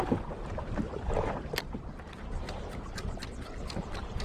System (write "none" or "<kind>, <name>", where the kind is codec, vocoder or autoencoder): vocoder, BigVGAN v2